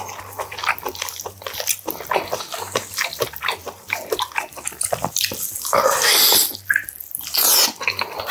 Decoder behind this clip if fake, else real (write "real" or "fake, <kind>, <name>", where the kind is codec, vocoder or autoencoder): real